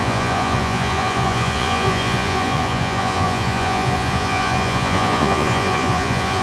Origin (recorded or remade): remade